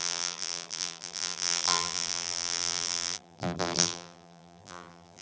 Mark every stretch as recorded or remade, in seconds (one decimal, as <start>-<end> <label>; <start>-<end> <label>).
0.0-5.2 remade